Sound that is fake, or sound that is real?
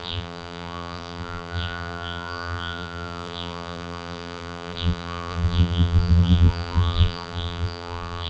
fake